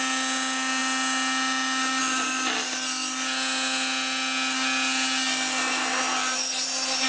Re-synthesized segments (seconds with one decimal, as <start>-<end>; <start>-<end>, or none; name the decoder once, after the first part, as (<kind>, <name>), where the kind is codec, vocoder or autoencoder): none